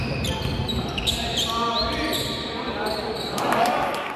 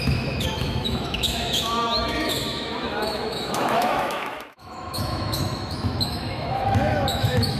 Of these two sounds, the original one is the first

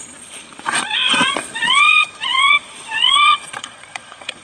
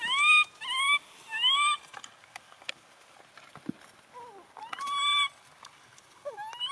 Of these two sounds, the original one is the second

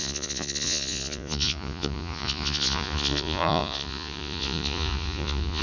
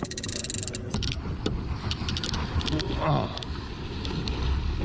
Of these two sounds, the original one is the second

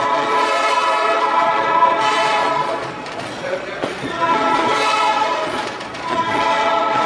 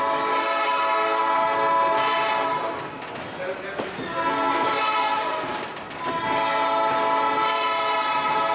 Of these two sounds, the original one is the second